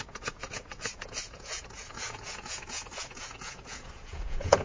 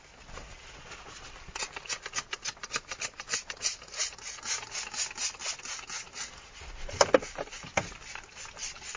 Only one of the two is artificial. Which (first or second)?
first